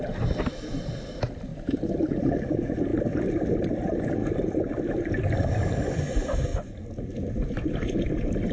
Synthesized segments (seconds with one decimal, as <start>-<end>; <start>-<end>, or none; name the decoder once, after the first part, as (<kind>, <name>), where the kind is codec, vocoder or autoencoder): none

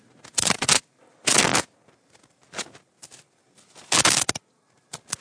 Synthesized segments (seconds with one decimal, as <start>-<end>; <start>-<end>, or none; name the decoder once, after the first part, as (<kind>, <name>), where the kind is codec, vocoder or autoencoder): none

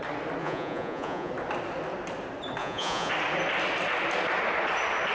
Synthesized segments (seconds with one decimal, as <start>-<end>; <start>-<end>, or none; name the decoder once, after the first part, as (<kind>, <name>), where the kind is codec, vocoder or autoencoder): 0.4-1.3 (vocoder, Vocos); 2.6-3.1